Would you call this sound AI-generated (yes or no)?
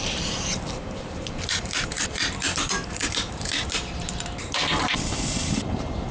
yes